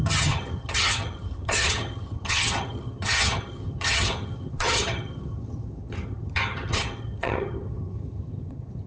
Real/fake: fake